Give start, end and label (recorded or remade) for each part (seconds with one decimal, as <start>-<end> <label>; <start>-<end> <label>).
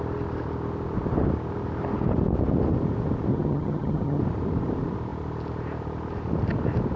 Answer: 0.0-3.3 recorded; 3.3-4.2 remade; 4.2-7.0 recorded